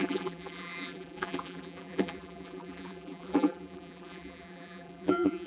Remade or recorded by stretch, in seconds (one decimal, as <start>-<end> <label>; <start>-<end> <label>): 0.0-5.5 remade